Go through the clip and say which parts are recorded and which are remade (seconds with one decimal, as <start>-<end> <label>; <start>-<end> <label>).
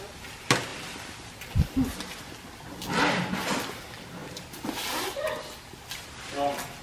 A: 0.0-4.2 recorded; 4.2-6.8 remade